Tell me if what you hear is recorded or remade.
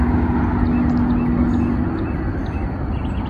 recorded